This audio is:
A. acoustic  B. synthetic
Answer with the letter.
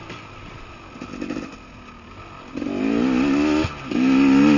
A